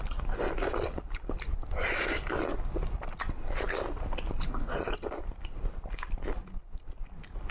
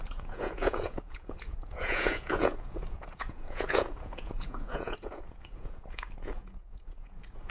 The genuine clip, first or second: first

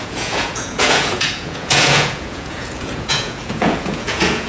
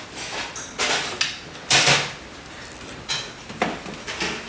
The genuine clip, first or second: second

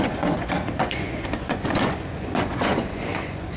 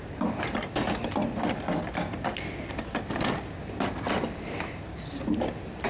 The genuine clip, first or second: second